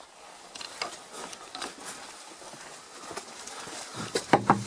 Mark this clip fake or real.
real